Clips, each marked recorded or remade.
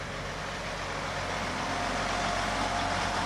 recorded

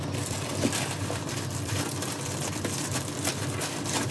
remade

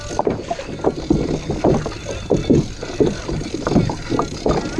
recorded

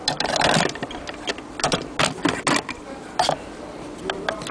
recorded